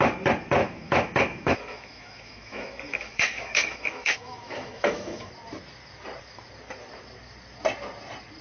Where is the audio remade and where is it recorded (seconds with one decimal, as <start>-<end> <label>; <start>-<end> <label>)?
0.0-0.6 recorded; 0.6-5.3 remade; 5.3-8.4 recorded